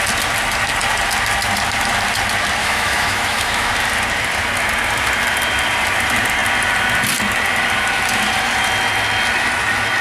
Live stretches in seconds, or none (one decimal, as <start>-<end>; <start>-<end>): 0.0-2.6; 3.7-10.0